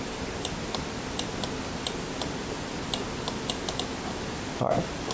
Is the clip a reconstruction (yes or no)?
no